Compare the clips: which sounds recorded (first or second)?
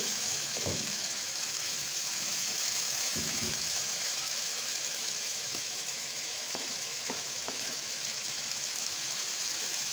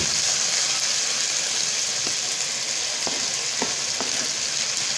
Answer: second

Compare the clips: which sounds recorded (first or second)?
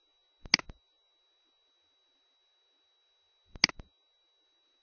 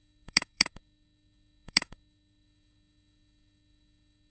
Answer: first